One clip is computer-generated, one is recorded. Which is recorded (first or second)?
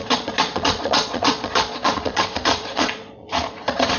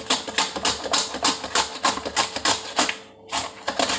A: second